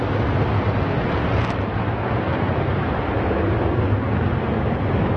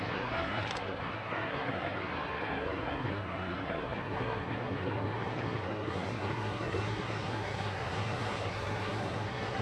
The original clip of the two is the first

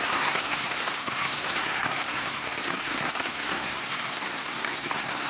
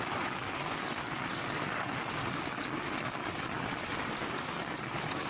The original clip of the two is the second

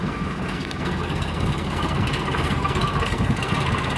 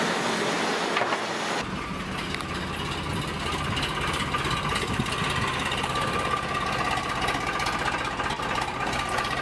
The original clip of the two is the second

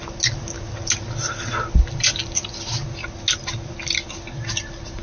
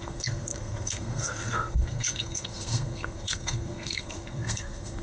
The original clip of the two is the first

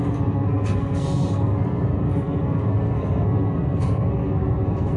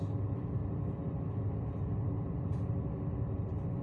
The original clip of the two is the second